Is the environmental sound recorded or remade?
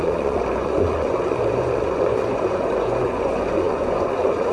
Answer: remade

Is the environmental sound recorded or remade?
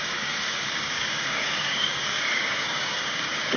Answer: remade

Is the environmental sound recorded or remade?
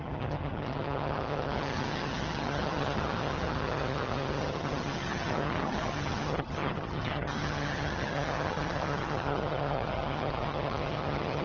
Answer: remade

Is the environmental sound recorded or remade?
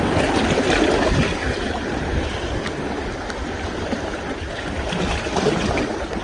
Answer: recorded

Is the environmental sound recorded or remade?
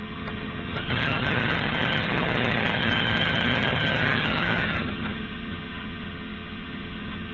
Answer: remade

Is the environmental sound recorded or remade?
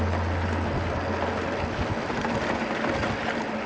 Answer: recorded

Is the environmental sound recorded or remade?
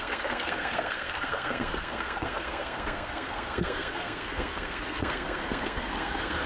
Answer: remade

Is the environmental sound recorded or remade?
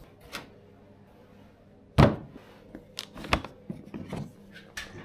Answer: recorded